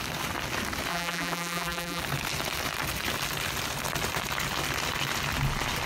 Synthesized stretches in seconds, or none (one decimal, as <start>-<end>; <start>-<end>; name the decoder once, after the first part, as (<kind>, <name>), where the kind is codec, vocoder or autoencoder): 0.9-2.0 (vocoder, BigVGAN v2)